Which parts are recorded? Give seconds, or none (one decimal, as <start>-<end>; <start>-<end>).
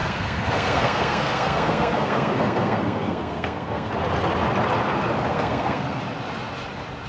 3.9-5.3; 6.0-7.1